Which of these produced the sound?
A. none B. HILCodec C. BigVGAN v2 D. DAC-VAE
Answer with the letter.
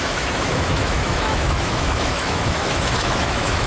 D